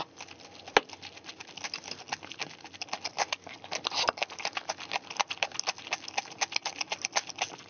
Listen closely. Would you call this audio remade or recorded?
recorded